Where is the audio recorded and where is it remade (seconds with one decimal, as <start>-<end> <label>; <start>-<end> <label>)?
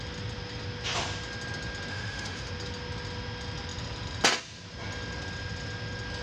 0.0-1.9 recorded; 1.9-2.5 remade; 2.5-6.2 recorded